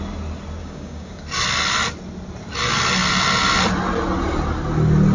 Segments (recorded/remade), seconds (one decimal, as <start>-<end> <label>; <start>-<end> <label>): 0.0-0.6 recorded; 0.6-1.2 remade; 1.2-5.1 recorded